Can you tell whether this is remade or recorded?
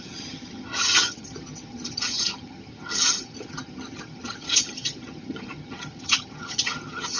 remade